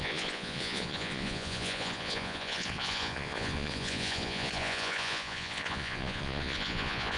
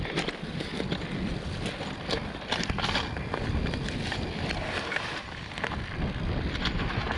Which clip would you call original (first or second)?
second